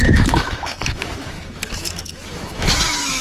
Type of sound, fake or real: fake